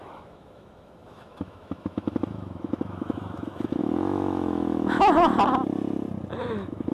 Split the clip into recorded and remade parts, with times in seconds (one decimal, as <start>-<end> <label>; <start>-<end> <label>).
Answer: 0.0-5.3 remade; 5.3-6.4 recorded; 6.4-6.9 remade